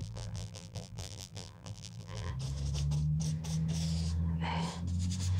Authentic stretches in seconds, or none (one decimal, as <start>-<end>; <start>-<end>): 2.3-5.4